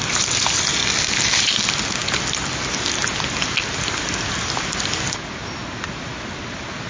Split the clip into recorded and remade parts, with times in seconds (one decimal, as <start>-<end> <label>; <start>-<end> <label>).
0.0-6.9 recorded